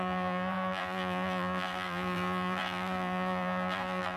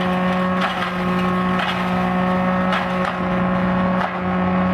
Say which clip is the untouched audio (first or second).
second